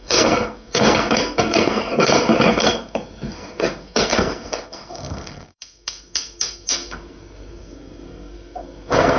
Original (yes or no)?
no